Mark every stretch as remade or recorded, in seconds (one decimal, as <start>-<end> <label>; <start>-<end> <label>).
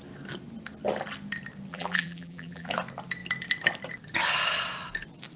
0.0-1.7 recorded; 1.7-2.7 remade; 2.7-5.4 recorded